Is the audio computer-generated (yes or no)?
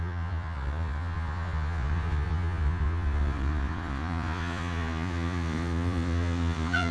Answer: yes